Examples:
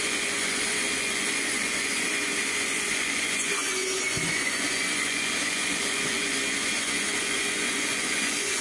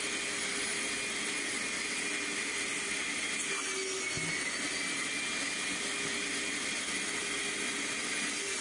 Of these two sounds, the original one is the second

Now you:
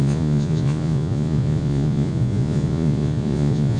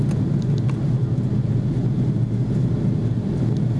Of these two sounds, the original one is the second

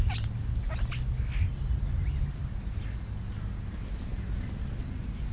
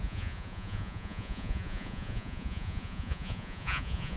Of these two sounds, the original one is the first